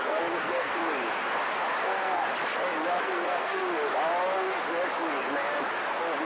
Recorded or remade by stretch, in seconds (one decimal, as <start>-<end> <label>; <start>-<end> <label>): 0.0-0.8 remade; 0.8-1.8 recorded; 1.8-2.3 remade; 2.3-3.0 recorded; 3.0-3.6 remade; 3.6-6.2 recorded